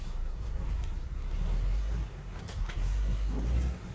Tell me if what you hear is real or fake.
fake